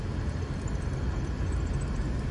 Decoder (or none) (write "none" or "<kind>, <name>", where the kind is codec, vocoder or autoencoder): none